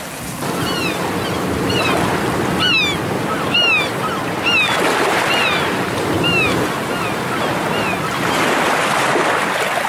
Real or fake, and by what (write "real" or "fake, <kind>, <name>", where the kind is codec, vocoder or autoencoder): real